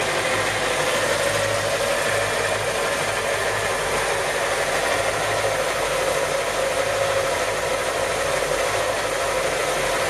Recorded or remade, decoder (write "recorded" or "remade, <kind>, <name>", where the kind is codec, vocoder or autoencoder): recorded